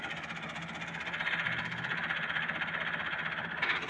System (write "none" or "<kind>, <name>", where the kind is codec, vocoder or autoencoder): none